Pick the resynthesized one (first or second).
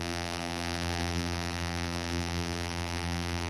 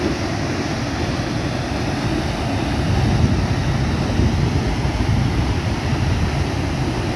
first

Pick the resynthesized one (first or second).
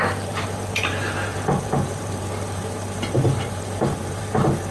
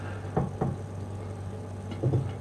first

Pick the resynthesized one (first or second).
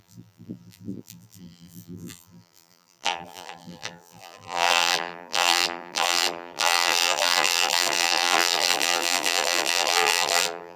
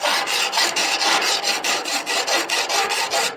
first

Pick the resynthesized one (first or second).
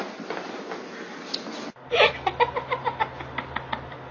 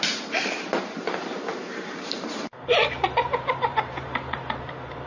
second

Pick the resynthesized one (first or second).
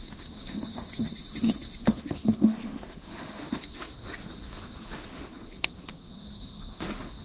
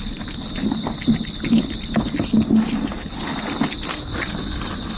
first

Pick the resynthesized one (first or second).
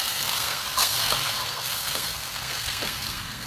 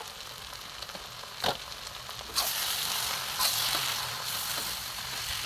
first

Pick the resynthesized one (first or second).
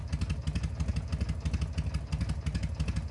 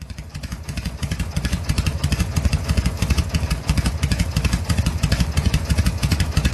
second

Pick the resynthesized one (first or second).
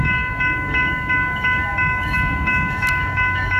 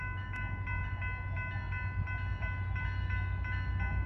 first